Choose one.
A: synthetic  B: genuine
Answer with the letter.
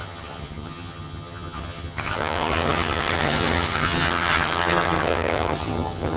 A